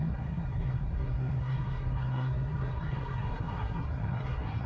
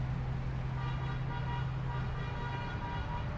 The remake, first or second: first